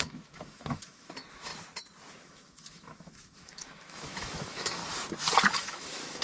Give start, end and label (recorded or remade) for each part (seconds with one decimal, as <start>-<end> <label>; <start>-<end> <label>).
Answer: 0.0-1.5 remade; 1.5-2.1 recorded; 2.1-4.8 remade; 4.8-5.5 recorded; 5.5-6.2 remade